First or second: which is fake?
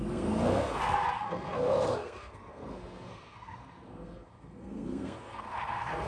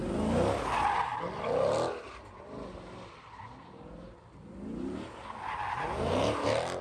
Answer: first